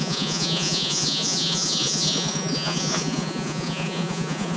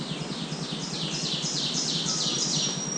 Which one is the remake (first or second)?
first